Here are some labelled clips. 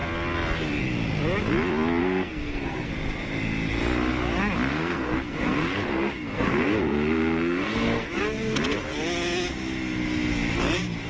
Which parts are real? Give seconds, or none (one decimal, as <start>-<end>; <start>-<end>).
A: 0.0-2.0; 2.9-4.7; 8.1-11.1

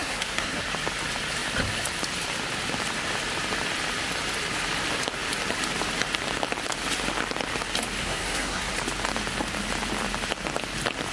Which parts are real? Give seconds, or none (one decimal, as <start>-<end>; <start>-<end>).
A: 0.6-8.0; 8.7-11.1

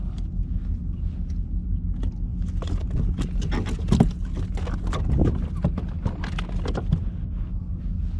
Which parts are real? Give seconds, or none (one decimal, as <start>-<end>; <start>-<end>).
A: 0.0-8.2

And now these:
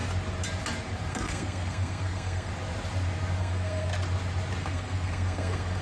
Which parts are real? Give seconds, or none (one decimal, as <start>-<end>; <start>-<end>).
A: 0.0-1.1; 2.5-3.4; 3.9-4.6